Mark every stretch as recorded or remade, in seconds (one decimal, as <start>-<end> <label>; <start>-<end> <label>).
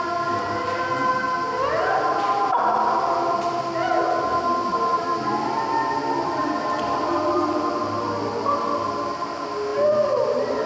0.0-4.9 recorded; 4.9-7.7 remade; 7.7-9.7 recorded; 9.7-10.7 remade